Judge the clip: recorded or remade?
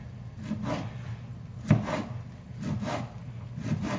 recorded